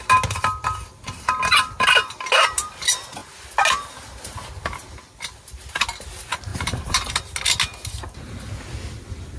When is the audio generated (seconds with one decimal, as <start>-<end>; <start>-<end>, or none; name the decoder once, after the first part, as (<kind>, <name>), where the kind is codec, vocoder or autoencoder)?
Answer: none